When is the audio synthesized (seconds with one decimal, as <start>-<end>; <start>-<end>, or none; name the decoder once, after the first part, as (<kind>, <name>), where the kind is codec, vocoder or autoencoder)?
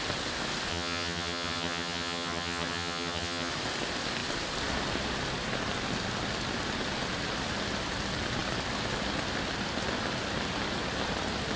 0.7-3.5 (vocoder, HiFi-GAN)